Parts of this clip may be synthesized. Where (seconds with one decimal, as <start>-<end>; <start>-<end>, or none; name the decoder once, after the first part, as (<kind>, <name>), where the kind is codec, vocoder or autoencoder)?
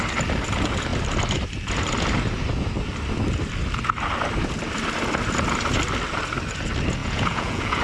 7.0-7.8 (vocoder, Vocos)